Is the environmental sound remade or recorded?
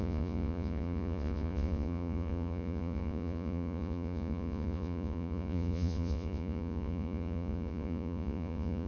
remade